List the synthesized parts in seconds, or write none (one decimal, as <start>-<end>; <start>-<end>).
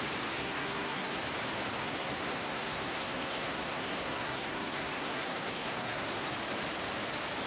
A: 0.4-1.2; 1.8-6.3